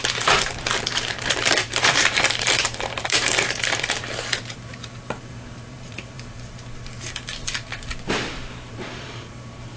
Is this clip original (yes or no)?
no